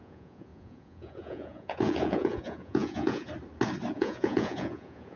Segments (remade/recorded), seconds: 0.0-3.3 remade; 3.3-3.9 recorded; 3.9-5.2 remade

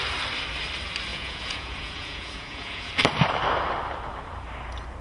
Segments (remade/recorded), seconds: 0.0-1.1 recorded; 1.1-2.9 remade; 2.9-5.0 recorded

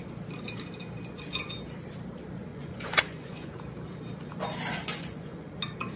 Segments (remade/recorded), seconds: 0.0-2.5 recorded; 2.5-3.6 remade; 3.6-4.8 recorded; 4.8-5.5 remade; 5.5-6.0 recorded

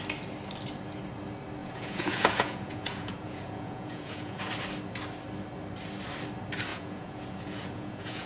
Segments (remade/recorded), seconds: 0.0-1.6 recorded; 1.6-4.5 remade; 4.5-6.7 recorded; 6.7-8.3 remade

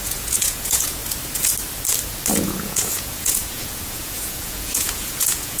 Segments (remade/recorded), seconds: 0.0-1.0 remade; 1.0-2.4 recorded; 2.4-5.6 remade

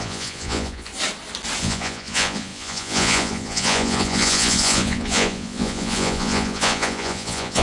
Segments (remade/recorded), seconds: 0.0-0.9 remade; 0.9-1.6 recorded; 1.6-7.6 remade

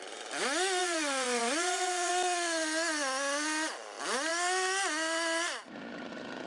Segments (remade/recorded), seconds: 0.0-0.8 recorded; 0.8-2.1 remade; 2.1-6.5 recorded

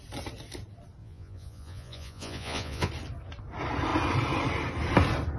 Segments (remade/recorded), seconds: 0.0-1.0 recorded; 1.0-2.9 remade; 2.9-5.4 recorded